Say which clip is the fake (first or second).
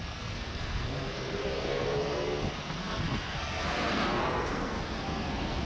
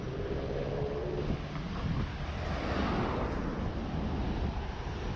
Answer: first